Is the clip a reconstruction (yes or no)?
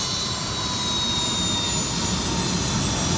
no